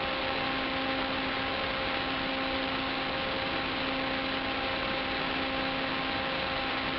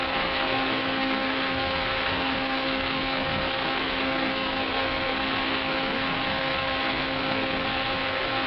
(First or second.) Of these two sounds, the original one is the first